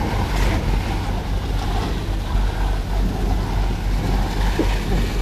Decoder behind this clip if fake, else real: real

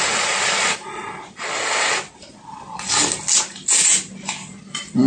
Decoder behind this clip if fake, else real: real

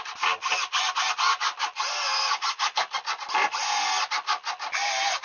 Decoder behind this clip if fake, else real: real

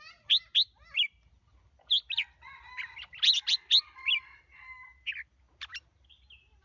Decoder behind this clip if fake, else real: real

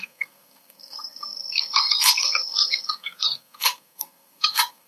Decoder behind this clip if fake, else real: fake, codec, SNAC